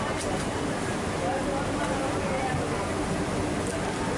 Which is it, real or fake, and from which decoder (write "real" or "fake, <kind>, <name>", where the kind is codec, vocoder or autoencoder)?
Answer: real